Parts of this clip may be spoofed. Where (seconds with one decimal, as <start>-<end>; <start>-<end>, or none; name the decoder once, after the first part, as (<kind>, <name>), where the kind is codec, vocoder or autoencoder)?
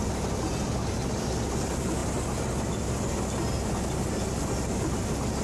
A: none